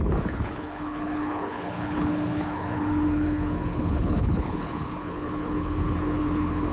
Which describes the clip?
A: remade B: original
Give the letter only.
A